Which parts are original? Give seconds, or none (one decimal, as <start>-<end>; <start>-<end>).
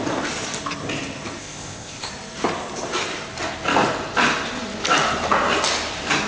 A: 0.0-1.4; 2.1-6.3